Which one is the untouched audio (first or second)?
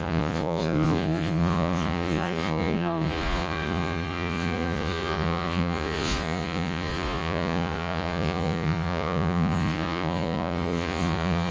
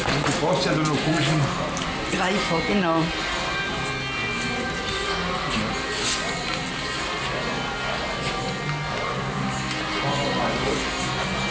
second